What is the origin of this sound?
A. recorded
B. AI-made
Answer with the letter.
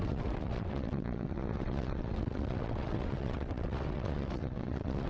B